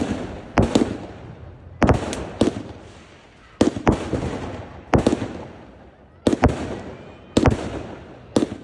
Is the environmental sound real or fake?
real